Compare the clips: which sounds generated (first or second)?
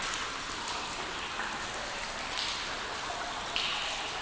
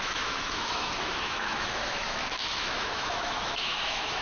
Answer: second